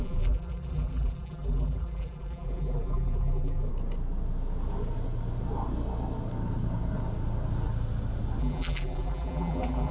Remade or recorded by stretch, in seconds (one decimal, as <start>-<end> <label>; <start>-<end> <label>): 0.0-3.7 remade; 3.7-8.4 recorded; 8.4-9.9 remade